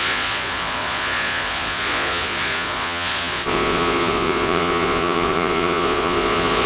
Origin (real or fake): fake